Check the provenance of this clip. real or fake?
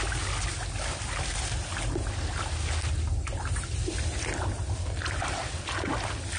real